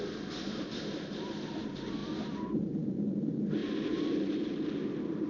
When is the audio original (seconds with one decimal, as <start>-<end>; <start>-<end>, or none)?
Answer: 0.0-5.3